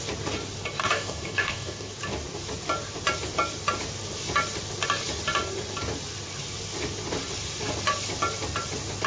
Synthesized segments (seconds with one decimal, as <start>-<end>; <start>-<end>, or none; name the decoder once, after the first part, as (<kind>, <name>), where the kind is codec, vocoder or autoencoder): 0.8-1.9 (codec, DAC)